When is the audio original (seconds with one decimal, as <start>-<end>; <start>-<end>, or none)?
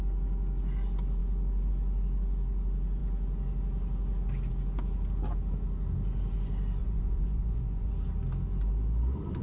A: 0.0-6.8; 7.9-9.4